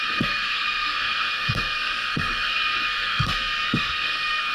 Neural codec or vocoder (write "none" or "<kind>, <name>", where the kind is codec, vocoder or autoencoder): codec, SNAC